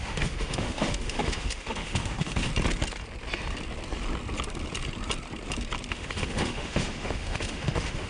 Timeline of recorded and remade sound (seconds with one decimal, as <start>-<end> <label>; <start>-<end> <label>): 0.0-2.5 remade; 2.5-5.9 recorded; 5.9-8.1 remade